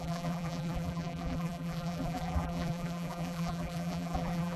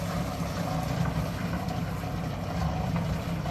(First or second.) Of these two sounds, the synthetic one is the first